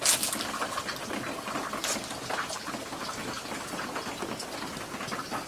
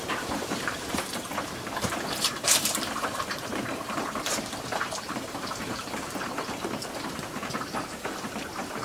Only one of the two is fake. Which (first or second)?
second